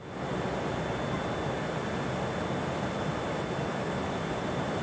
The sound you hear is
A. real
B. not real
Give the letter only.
A